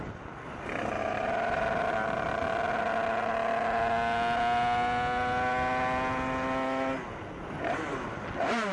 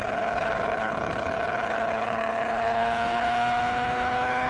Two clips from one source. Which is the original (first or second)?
first